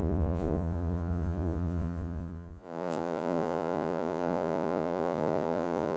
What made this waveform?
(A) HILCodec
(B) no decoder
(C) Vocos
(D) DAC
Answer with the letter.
C